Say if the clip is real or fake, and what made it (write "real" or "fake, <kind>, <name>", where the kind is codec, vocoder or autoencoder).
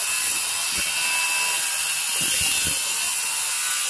real